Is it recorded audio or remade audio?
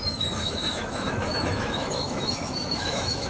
remade